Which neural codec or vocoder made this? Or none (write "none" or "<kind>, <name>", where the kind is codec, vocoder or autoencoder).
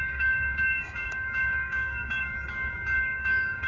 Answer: codec, DAC